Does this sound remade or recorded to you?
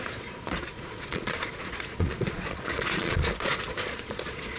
remade